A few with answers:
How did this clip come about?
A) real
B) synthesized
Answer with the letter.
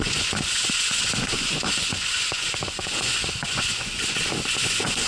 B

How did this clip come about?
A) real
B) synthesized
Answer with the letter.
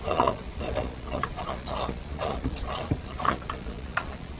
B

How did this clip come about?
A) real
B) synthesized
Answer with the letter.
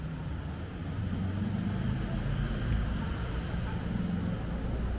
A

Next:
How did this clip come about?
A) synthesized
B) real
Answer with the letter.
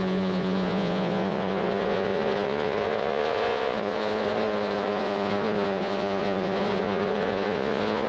A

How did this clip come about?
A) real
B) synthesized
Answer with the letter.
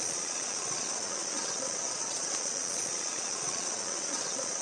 B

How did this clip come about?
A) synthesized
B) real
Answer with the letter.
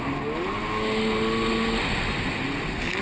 B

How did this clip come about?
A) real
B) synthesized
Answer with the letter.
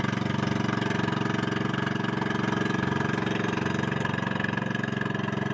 A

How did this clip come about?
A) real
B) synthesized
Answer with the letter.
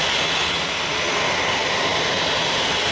A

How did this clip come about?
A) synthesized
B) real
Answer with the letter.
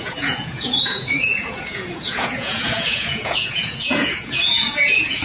A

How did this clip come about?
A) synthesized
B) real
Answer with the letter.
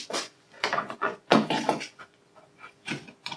A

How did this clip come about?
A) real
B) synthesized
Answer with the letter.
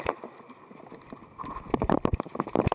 A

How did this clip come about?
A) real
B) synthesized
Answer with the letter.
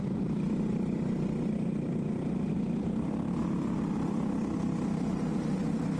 A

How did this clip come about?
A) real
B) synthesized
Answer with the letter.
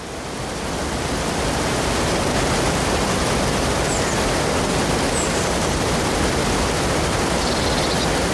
A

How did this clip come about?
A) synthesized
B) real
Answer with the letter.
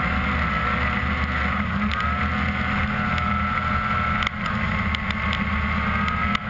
B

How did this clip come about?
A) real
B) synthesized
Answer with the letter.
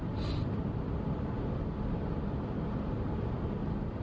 A